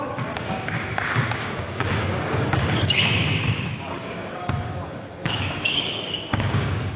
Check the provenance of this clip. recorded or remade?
remade